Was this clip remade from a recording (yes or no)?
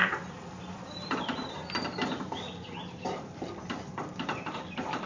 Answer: yes